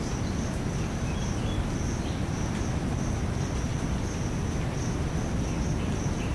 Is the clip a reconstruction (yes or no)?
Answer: no